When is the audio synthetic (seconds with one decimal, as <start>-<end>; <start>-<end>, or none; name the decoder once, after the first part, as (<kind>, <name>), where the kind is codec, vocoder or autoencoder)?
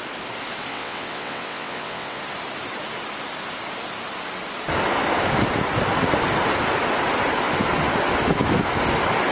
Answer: 0.7-2.2 (vocoder, WaveNeXt)